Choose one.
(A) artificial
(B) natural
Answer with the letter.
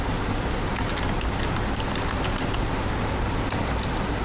B